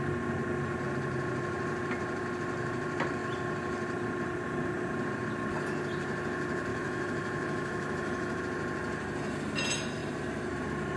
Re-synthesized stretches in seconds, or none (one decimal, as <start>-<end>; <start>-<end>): 6.7-8.4